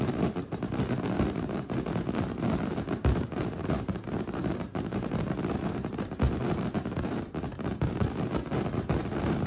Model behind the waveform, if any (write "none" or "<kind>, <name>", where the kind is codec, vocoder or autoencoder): vocoder, BigVGAN v2